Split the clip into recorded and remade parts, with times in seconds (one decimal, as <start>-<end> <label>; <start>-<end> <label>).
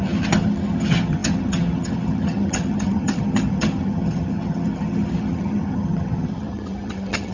0.0-7.3 remade